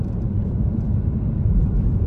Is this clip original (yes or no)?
no